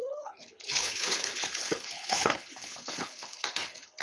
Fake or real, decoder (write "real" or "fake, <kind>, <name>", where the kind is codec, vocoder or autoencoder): fake, codec, HILCodec